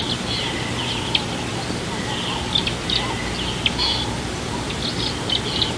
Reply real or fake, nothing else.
real